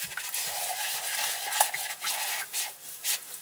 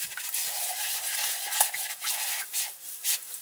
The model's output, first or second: second